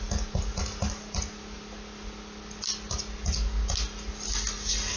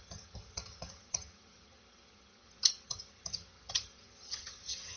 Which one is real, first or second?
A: first